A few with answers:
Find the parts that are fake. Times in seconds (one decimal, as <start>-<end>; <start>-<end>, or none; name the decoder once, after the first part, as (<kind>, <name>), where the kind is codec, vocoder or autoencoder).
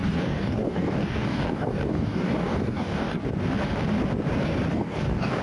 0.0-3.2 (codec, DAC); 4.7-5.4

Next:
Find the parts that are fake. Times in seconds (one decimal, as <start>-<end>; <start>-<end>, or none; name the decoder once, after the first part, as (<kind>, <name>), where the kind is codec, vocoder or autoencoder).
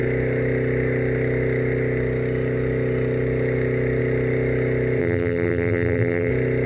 5.0-6.3 (vocoder, BigVGAN v2)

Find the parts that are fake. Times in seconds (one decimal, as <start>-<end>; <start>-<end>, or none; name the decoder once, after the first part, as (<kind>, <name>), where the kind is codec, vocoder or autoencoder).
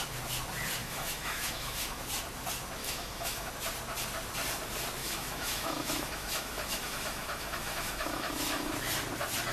0.8-2.0 (autoencoder, DAC-VAE); 2.8-3.5; 5.0-8.7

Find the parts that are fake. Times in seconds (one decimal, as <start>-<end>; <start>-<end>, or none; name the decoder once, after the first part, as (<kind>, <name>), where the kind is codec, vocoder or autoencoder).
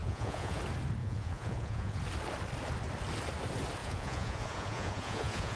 0.0-0.6 (vocoder, Vocos); 1.0-2.0; 3.8-5.6